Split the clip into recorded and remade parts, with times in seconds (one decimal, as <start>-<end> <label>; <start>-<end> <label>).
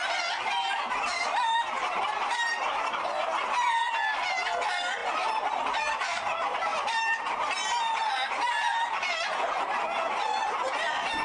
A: 0.0-6.7 recorded; 6.7-7.4 remade; 7.4-11.2 recorded